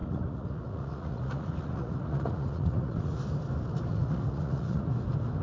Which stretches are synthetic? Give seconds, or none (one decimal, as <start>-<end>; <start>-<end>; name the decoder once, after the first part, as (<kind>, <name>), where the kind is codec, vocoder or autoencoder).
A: 0.0-3.2 (vocoder, Vocos); 3.9-4.9

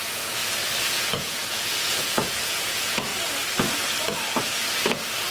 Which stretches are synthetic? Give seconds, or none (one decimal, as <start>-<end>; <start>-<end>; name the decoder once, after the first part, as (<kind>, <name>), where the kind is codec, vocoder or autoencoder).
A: 0.0-0.4 (vocoder, Vocos); 0.9-3.1

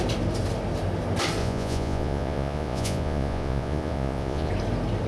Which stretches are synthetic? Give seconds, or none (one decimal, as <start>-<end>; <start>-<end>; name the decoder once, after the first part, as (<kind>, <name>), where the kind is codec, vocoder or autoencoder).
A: 1.4-4.5 (vocoder, Vocos)

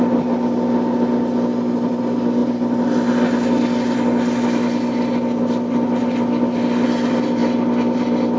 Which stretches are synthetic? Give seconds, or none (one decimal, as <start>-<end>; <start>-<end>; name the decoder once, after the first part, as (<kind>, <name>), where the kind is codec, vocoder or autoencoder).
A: none

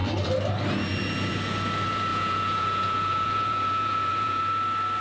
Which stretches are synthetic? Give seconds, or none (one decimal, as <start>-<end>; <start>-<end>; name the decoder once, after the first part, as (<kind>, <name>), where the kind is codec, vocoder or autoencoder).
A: 2.1-4.4 (vocoder, Vocos)

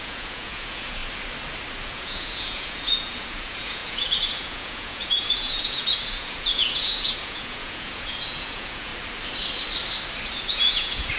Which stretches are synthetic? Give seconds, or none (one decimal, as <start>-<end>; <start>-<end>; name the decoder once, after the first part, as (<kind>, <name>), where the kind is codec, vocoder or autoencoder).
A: 0.0-1.0 (vocoder, Vocos); 1.9-8.9; 10.4-11.2

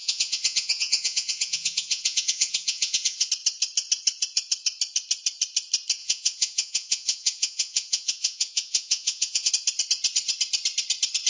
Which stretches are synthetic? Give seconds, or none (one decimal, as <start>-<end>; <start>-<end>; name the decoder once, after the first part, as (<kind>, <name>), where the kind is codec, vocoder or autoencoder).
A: 0.0-3.3 (vocoder, Vocos); 6.0-9.5